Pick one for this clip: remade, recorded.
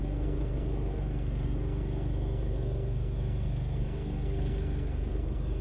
remade